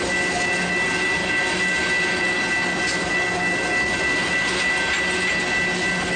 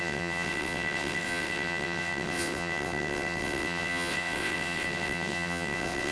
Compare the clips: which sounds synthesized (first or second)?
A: second